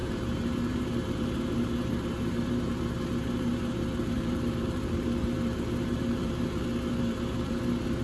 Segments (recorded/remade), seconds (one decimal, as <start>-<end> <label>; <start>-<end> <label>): 0.0-8.0 remade